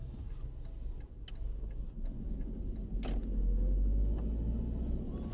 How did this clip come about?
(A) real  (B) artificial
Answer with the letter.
A